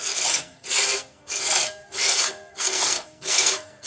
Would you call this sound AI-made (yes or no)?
yes